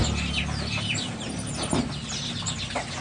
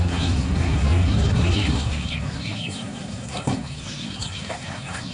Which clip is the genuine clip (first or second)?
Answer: first